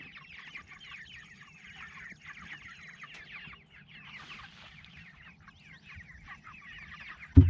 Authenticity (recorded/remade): recorded